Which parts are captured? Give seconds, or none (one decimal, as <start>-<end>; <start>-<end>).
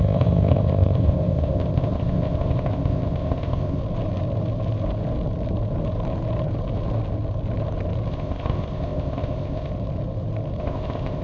3.8-8.1; 9.7-10.6